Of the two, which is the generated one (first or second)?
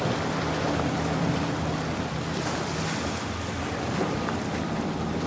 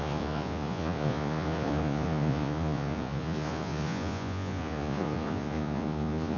second